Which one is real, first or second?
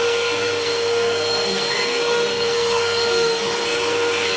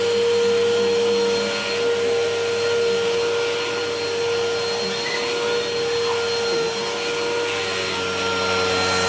second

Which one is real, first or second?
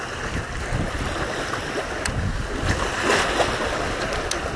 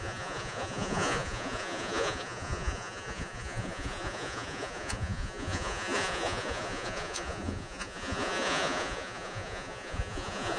first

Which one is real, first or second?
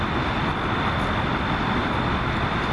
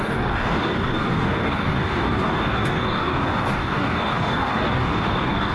first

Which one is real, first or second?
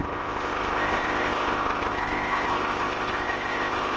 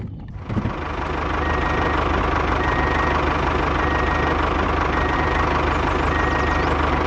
second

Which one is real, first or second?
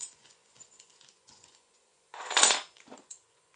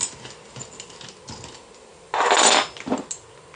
second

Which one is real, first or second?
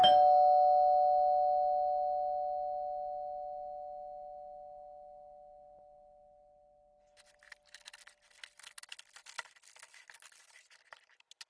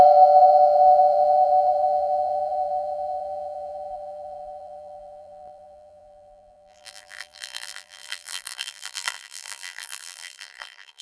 first